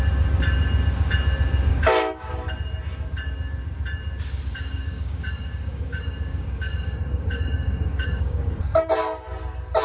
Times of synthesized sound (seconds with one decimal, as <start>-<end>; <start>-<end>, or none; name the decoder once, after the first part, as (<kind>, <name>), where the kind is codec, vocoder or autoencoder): 1.7-2.3 (codec, DAC); 4.5-8.5